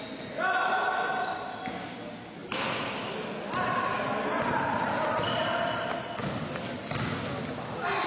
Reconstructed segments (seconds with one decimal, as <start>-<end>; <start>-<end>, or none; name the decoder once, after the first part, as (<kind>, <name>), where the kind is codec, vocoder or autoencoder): none